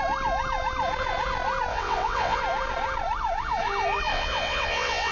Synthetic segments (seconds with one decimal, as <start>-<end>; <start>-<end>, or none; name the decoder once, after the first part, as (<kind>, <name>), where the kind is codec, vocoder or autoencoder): 1.7-2.4 (vocoder, WaveNeXt); 4.1-5.1